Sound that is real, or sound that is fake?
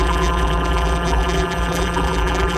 fake